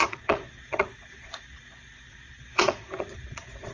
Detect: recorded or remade remade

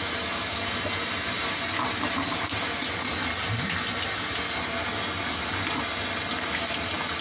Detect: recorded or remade recorded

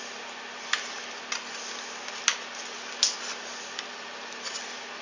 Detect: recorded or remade recorded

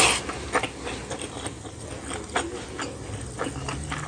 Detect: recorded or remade recorded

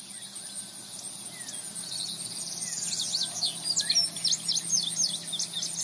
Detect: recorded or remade recorded